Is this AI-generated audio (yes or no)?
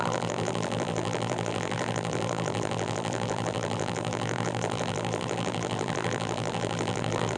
yes